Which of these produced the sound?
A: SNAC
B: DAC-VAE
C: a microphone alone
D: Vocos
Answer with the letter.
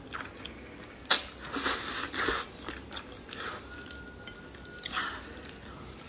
C